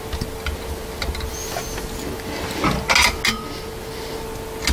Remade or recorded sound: recorded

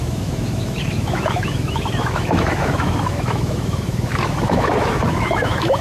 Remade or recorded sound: remade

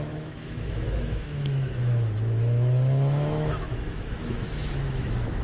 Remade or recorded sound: remade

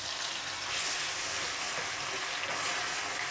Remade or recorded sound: recorded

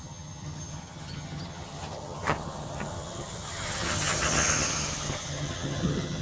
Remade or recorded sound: remade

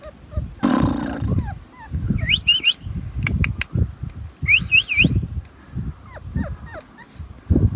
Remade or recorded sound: recorded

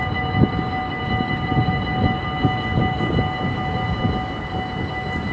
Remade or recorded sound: recorded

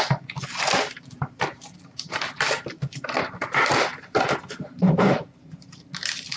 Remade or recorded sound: recorded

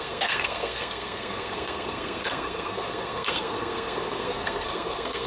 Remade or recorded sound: remade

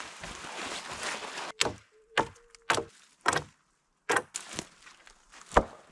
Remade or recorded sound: recorded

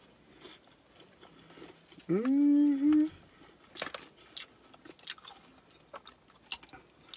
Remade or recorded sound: recorded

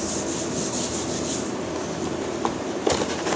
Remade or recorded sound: recorded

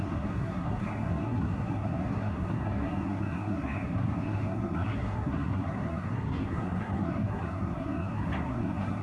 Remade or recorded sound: remade